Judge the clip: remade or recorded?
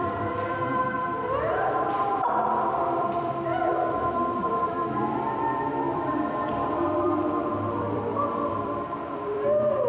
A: remade